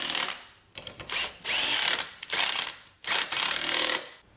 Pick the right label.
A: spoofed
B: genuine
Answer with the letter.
A